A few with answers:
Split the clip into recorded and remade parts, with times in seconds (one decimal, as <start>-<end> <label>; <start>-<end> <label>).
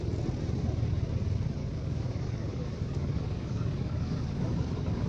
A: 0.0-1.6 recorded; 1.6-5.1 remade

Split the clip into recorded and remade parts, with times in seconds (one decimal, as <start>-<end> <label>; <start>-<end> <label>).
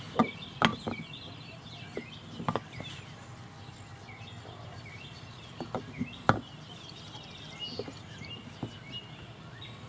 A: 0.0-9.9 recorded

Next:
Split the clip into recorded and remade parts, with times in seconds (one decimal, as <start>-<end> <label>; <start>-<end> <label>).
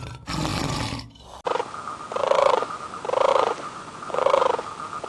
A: 0.0-2.2 recorded; 2.2-2.8 remade; 2.8-3.3 recorded; 3.3-4.4 remade; 4.4-5.1 recorded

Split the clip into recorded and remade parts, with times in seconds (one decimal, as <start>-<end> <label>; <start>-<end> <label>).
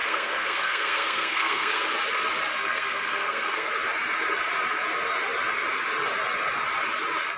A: 0.0-1.8 remade; 1.8-2.5 recorded; 2.5-3.7 remade; 3.7-7.4 recorded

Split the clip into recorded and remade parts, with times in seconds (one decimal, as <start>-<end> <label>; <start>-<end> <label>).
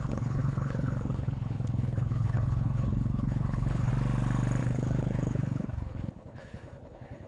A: 0.0-3.9 remade; 3.9-4.6 recorded; 4.6-7.3 remade